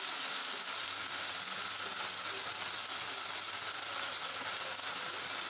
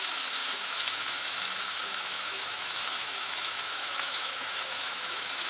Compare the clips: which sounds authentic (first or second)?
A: first